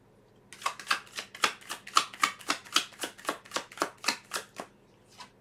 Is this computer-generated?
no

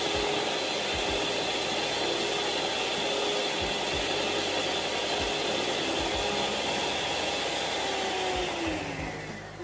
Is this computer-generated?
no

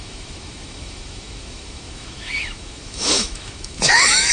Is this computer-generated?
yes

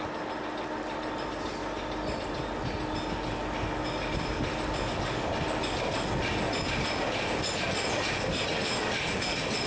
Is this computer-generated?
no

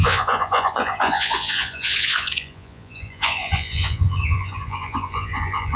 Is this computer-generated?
yes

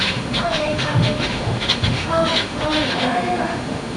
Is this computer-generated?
yes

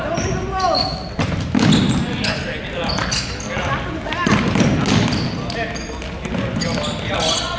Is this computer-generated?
no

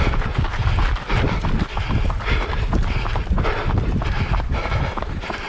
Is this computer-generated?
no